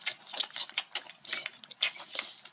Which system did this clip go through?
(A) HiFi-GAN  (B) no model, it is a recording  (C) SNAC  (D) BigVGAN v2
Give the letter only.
B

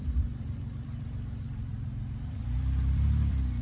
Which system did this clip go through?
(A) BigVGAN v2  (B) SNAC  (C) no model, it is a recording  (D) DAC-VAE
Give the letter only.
A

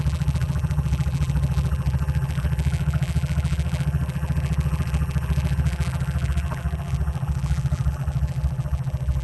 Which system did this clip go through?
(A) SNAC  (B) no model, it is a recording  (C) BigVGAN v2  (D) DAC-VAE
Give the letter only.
C